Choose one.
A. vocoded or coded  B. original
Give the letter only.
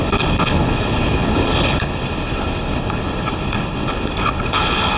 A